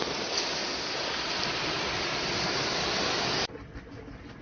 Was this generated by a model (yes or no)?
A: no